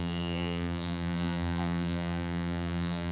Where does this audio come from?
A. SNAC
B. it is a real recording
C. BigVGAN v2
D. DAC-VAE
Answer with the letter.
C